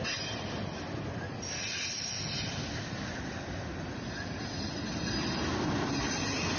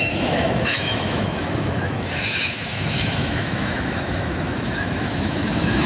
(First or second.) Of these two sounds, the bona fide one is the first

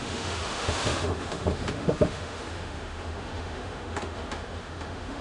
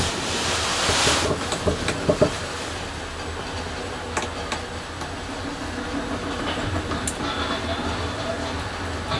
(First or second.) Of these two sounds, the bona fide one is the second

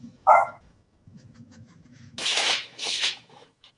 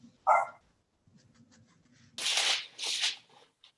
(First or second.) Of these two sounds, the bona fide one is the second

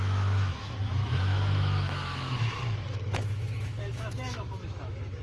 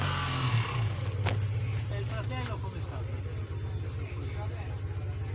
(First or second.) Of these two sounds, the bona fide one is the second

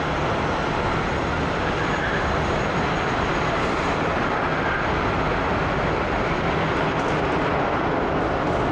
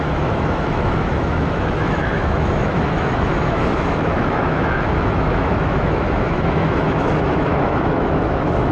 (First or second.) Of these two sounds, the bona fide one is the first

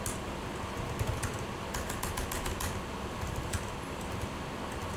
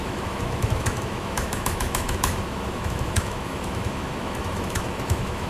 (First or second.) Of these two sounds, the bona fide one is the first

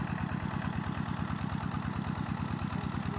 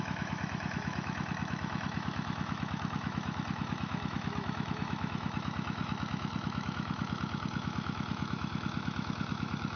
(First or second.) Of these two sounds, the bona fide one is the first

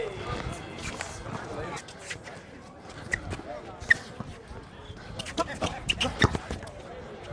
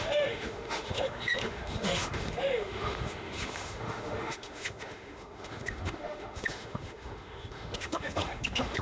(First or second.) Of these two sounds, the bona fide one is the first